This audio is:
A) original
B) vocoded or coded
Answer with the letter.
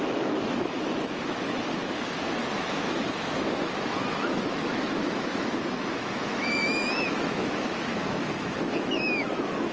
B